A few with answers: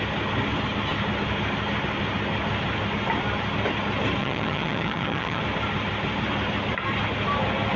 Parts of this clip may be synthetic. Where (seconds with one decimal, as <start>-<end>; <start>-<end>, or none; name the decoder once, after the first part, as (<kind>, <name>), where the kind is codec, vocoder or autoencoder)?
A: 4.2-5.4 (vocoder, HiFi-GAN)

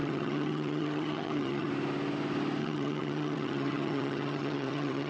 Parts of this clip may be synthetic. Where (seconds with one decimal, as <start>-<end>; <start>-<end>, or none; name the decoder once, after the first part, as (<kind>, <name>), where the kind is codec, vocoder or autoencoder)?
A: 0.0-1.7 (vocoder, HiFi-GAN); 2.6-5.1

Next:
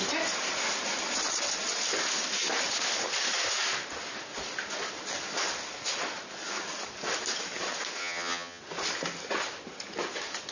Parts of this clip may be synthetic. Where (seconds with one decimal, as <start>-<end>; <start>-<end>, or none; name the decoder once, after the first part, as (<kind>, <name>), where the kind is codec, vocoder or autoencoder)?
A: 8.0-8.6 (vocoder, HiFi-GAN)

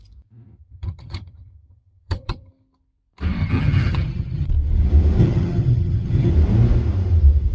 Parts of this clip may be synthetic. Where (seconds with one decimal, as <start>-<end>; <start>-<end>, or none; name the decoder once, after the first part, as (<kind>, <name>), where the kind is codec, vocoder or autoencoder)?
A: 0.6-2.5 (vocoder, HiFi-GAN); 3.4-4.5; 5.2-6.3

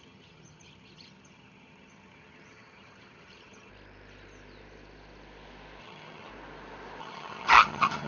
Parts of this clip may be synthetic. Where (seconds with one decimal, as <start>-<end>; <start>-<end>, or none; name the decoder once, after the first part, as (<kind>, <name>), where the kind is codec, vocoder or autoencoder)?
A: 0.0-3.7 (vocoder, HiFi-GAN); 5.8-6.3; 7.0-8.1

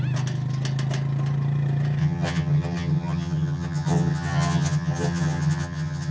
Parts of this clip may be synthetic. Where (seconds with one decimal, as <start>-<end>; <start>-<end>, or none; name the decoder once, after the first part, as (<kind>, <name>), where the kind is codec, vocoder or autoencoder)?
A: 2.0-6.1 (vocoder, HiFi-GAN)